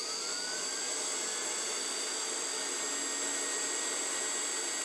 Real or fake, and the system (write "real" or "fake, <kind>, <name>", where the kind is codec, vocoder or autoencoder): real